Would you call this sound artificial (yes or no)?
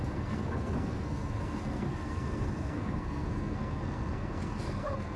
yes